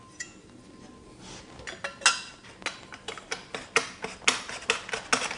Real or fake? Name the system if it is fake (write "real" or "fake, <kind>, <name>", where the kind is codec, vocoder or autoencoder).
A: real